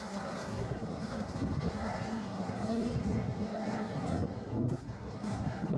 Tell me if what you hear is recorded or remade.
remade